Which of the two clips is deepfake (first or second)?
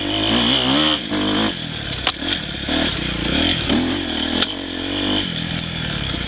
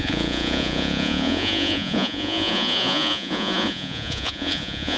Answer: second